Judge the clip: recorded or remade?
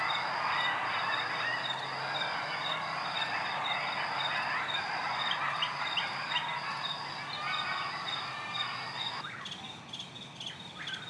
recorded